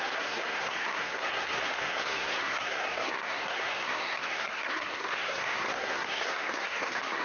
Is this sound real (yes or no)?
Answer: no